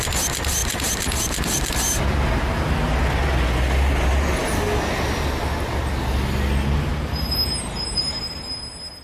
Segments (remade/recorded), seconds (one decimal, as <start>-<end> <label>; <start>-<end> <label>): 0.0-0.6 recorded; 0.6-1.7 remade; 1.7-6.9 recorded; 6.9-8.0 remade; 8.0-9.0 recorded